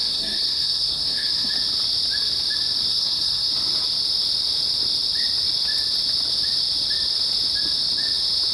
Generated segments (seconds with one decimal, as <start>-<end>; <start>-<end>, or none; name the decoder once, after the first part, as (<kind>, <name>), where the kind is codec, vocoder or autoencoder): 0.0-1.5 (codec, SNAC); 2.9-3.5